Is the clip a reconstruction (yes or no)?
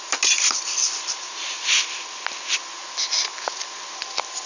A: no